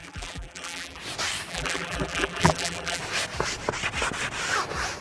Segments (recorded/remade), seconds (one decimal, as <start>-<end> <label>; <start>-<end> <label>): 0.0-1.0 remade; 1.0-1.5 recorded; 1.5-3.0 remade; 3.0-5.0 recorded